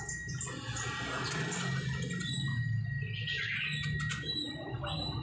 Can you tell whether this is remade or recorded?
recorded